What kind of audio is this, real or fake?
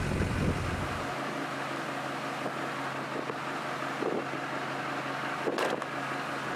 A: real